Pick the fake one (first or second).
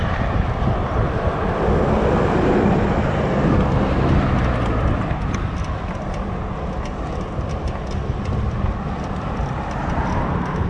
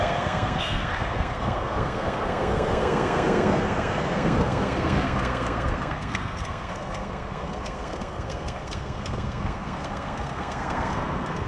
second